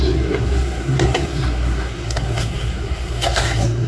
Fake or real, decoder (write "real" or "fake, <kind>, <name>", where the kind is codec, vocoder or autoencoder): fake, codec, SNAC